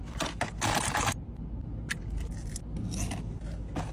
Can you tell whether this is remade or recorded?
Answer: recorded